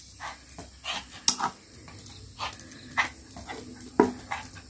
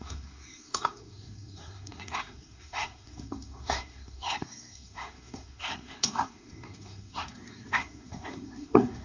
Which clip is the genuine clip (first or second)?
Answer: first